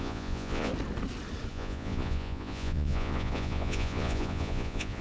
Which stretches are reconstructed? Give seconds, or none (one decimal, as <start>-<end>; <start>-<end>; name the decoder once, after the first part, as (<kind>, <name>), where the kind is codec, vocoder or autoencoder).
0.0-0.7 (vocoder, Vocos); 1.5-5.0